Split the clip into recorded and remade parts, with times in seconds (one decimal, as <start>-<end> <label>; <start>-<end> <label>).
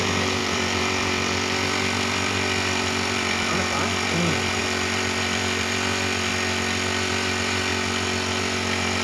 0.0-6.3 remade; 6.3-7.1 recorded; 7.1-7.7 remade; 7.7-8.4 recorded; 8.4-9.0 remade